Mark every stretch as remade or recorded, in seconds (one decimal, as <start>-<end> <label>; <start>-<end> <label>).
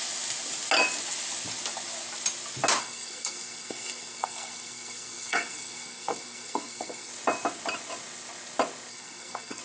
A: 0.0-2.8 recorded; 2.8-7.1 remade; 7.1-8.9 recorded; 8.9-9.6 remade